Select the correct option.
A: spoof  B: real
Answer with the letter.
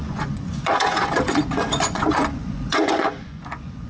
A